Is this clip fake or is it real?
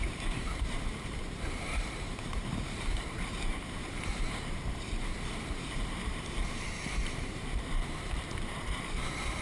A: fake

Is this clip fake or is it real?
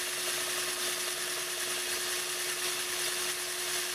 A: real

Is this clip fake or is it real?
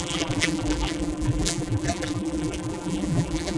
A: fake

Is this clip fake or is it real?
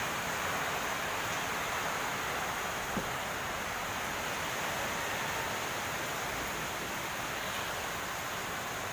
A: real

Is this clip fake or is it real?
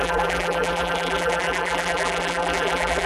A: fake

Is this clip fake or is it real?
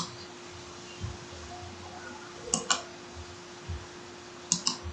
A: real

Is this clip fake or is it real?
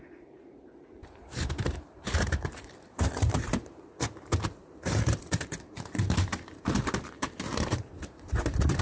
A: fake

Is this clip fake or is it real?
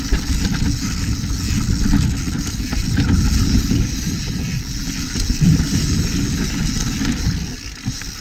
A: real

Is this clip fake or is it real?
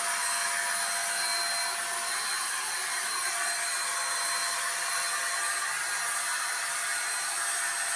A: real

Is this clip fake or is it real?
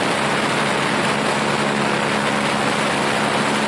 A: real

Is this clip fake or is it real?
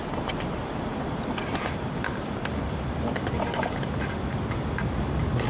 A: real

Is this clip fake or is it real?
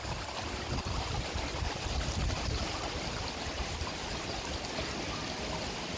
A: real